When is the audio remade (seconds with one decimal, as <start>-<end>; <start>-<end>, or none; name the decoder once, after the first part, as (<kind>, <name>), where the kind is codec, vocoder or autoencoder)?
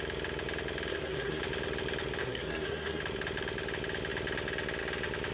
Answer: 0.9-1.4 (codec, SNAC); 2.2-3.0